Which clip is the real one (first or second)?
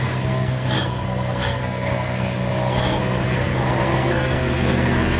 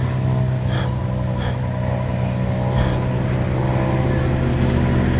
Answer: second